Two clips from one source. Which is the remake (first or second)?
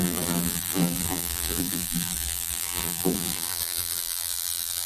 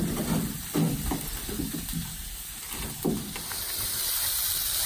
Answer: first